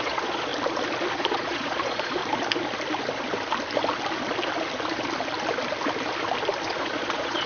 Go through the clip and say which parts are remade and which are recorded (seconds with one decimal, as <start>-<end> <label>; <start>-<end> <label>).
0.0-0.5 remade; 0.5-1.1 recorded; 1.1-2.2 remade; 2.2-6.7 recorded; 6.7-7.5 remade